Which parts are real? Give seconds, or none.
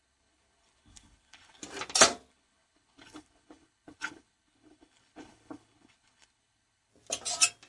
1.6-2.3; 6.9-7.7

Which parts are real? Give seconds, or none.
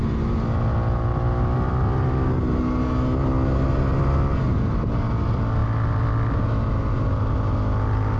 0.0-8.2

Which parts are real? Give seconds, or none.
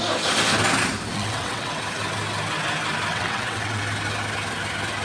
0.0-1.1; 1.8-3.1; 3.8-5.0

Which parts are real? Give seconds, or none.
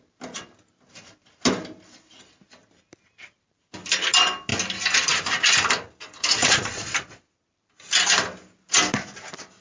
0.0-6.4; 7.5-9.6